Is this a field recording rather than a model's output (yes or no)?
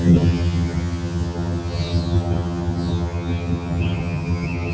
no